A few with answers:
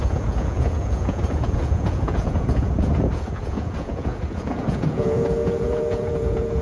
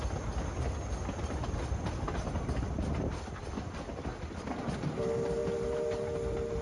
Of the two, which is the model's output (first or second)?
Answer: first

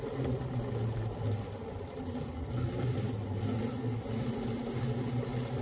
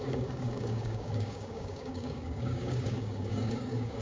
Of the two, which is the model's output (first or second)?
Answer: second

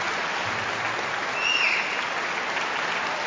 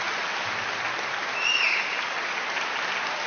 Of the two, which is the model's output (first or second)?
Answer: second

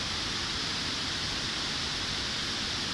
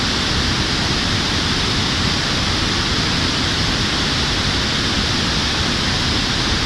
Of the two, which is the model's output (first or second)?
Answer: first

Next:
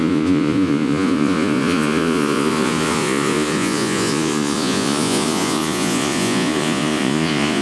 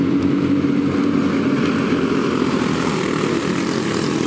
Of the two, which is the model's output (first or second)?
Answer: first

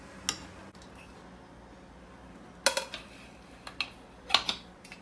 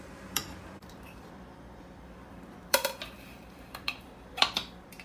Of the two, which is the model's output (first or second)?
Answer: second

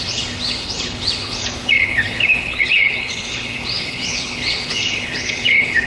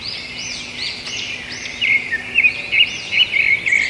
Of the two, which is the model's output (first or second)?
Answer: first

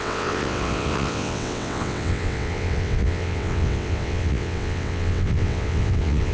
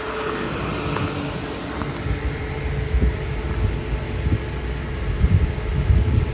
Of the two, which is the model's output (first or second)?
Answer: first